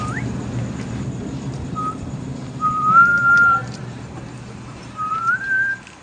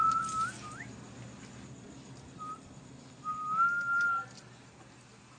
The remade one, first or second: first